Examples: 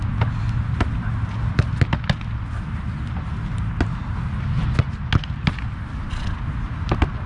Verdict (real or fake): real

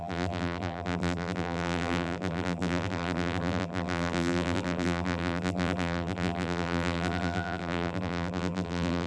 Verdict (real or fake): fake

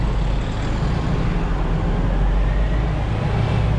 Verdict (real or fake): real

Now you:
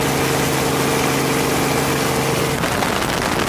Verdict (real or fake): real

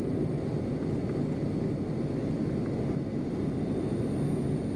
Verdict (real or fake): real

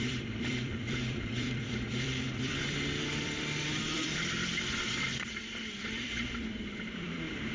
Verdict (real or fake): fake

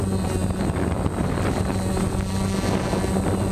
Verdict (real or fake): real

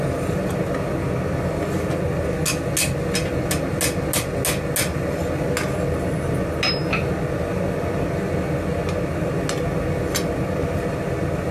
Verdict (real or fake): real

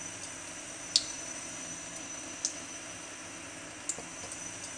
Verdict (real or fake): real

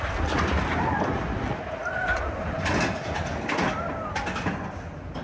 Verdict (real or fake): real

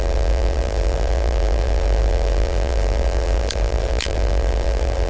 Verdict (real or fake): fake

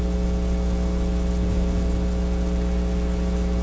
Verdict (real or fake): real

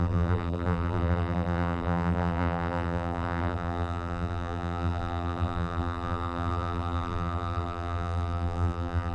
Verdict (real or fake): fake